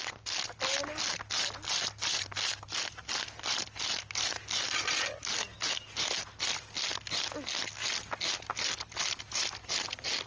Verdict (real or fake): real